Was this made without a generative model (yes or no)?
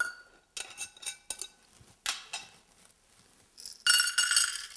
yes